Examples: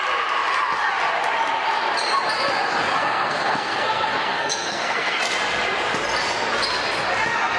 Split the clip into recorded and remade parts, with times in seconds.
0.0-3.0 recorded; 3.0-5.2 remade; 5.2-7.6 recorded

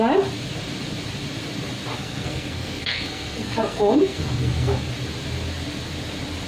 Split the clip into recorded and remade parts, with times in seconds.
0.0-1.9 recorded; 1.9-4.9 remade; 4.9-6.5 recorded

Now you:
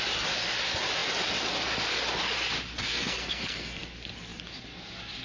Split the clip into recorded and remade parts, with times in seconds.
0.0-2.8 recorded; 2.8-3.8 remade; 3.8-5.2 recorded

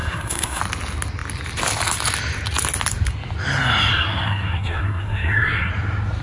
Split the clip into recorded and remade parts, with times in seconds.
0.0-0.6 remade; 0.6-3.9 recorded; 3.9-5.7 remade; 5.7-6.2 recorded

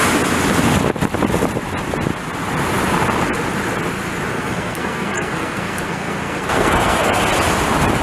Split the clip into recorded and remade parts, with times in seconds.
0.0-4.3 recorded; 4.3-7.1 remade; 7.1-8.0 recorded

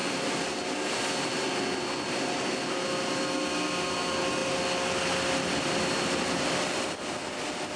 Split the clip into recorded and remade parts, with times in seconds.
0.0-7.8 recorded

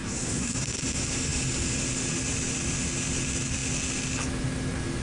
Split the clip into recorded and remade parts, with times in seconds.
0.0-0.7 remade; 0.7-5.0 recorded

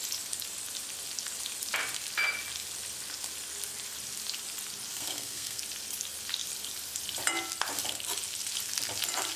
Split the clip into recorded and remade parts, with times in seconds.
0.0-4.9 recorded; 4.9-5.6 remade; 5.6-9.4 recorded